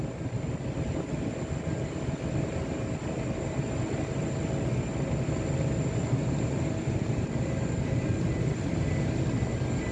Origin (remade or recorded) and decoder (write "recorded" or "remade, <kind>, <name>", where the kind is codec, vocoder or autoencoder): recorded